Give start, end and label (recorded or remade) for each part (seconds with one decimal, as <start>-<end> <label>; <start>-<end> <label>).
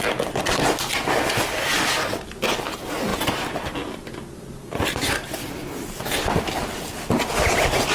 0.0-7.9 recorded